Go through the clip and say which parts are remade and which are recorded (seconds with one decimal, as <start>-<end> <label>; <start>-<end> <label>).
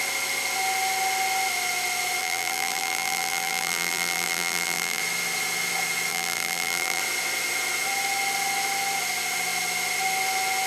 0.0-2.2 recorded; 2.2-5.0 remade; 5.0-6.1 recorded; 6.1-7.0 remade; 7.0-10.7 recorded